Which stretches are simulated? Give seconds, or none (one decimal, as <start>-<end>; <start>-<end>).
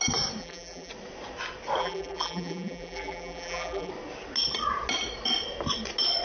0.4-0.9; 1.8-3.9